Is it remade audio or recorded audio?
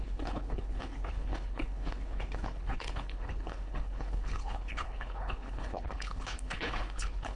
remade